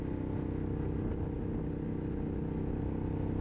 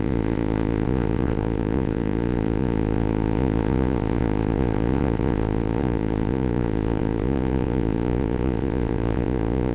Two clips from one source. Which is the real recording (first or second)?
first